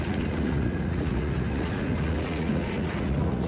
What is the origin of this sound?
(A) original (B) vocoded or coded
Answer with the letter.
B